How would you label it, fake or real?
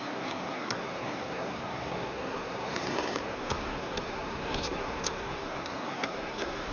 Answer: fake